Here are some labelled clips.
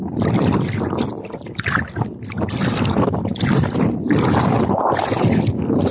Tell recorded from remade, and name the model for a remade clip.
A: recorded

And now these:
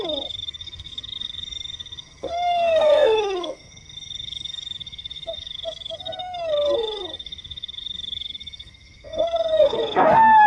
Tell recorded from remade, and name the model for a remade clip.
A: remade, codec, SNAC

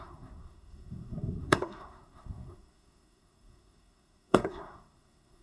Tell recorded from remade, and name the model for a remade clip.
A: remade, codec, SNAC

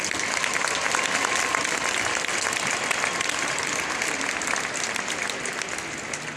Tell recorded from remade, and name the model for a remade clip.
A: recorded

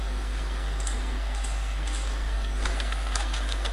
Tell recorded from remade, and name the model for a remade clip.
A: remade, codec, SNAC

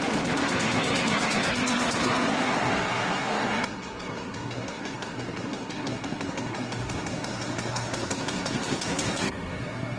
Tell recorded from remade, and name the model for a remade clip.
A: remade, codec, SNAC